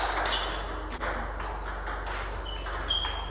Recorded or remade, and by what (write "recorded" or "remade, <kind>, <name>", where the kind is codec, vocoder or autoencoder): recorded